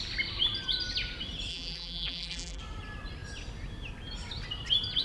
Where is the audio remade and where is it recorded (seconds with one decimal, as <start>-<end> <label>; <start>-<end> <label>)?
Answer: 0.0-1.5 recorded; 1.5-2.6 remade; 2.6-5.0 recorded